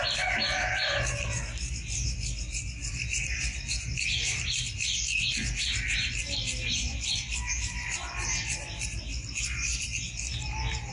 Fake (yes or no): no